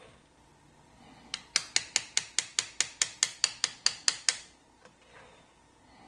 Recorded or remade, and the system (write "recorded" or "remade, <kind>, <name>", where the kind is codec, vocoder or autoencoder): recorded